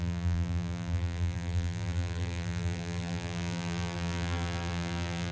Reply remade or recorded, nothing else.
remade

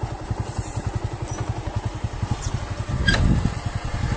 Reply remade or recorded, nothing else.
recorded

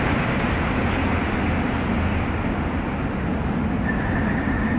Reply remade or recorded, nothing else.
recorded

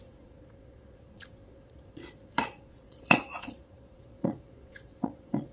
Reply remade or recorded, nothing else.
remade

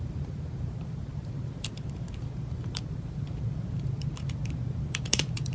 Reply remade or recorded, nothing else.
remade